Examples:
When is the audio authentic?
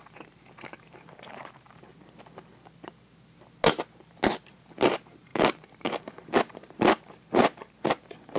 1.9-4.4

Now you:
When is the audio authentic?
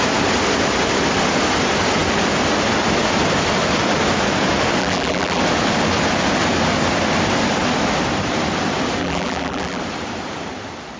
0.0-4.8; 5.4-9.0; 9.8-11.0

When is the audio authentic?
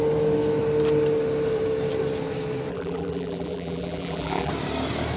0.0-2.7; 4.5-5.2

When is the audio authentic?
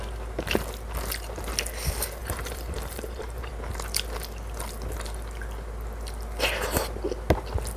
0.0-2.2; 3.5-7.8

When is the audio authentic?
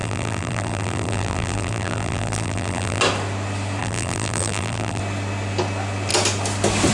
3.0-3.8; 5.0-6.9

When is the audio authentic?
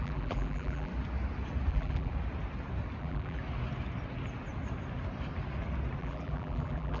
0.9-1.7; 2.1-3.0; 3.4-6.0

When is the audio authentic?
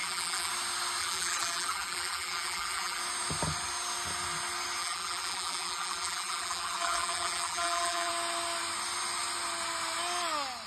0.5-1.0; 3.0-4.8; 8.1-10.7